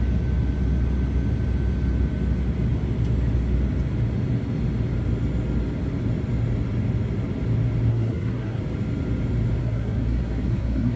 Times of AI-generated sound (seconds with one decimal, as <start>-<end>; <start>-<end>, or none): 7.9-8.6; 9.6-11.0